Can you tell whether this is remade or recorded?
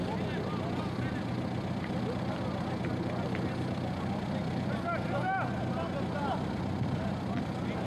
recorded